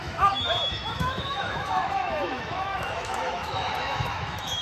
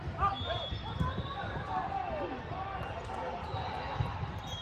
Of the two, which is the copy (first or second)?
first